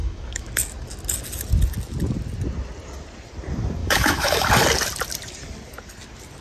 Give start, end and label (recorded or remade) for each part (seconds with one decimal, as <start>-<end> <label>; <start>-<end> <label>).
0.0-0.5 remade; 0.5-3.8 recorded; 3.8-4.5 remade; 4.5-6.4 recorded